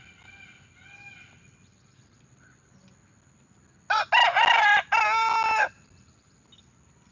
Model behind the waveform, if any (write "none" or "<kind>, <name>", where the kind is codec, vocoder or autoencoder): none